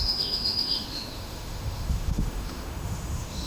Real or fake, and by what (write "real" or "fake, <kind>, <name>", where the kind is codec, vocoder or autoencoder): fake, autoencoder, DAC-VAE